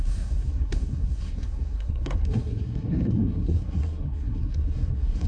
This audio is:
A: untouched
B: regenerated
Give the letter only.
B